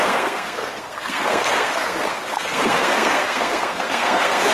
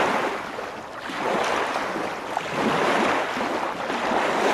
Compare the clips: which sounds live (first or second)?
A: second